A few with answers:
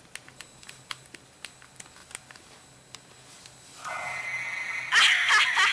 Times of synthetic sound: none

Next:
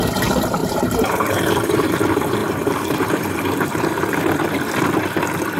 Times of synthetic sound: 0.6-1.9 (vocoder, BigVGAN v2); 2.4-4.0